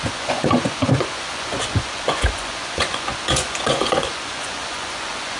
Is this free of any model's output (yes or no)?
no